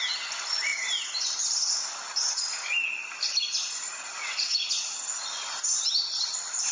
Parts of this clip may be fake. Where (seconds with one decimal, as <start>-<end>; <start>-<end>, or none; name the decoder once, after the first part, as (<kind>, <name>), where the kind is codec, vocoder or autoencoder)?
none